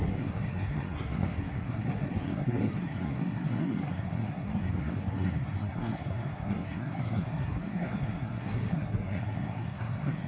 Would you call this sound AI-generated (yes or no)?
yes